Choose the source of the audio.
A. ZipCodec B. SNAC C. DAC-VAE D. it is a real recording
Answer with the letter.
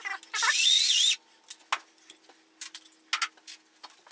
D